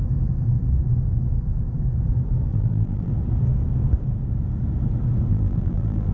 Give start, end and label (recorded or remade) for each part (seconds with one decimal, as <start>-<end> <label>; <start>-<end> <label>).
0.0-2.5 recorded; 2.5-3.1 remade; 3.1-5.3 recorded; 5.3-6.1 remade

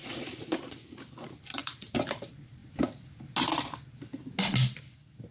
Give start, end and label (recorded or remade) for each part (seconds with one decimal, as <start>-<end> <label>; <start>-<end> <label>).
0.0-1.6 recorded; 1.6-2.2 remade; 2.2-5.3 recorded